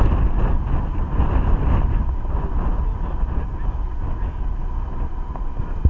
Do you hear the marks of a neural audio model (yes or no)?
no